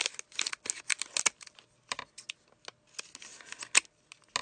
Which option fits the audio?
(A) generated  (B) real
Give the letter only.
B